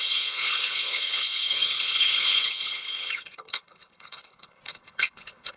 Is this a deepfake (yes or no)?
yes